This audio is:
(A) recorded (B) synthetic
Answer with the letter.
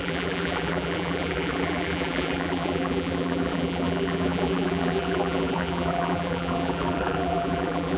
B